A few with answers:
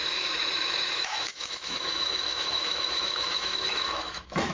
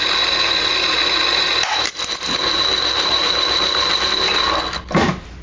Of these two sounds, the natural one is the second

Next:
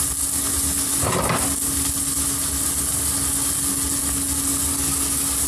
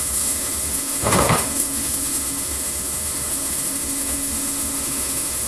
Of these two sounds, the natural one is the first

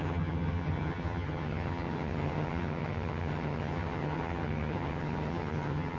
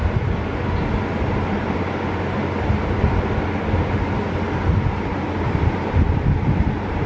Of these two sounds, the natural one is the second